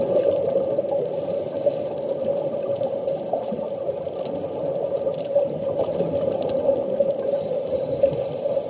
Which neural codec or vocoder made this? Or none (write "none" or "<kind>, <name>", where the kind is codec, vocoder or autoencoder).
none